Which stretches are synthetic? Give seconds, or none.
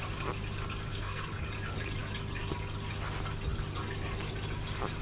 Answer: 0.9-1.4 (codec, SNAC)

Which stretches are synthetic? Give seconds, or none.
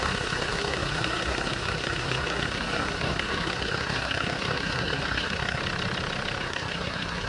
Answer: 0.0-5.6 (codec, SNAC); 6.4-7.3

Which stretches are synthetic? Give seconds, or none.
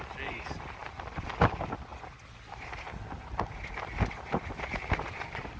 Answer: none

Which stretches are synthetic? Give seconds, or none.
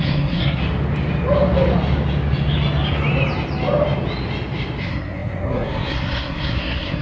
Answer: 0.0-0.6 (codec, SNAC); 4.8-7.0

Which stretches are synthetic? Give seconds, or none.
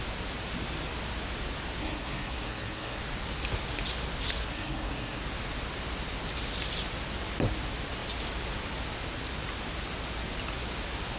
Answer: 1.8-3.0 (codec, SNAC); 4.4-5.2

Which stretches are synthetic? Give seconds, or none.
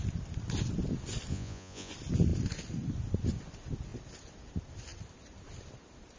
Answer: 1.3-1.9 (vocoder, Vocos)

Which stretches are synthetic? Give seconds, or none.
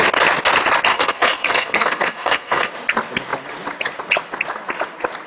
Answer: 0.9-2.7 (codec, SNAC)